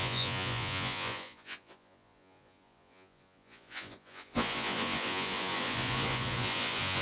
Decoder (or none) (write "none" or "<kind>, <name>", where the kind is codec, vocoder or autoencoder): vocoder, Vocos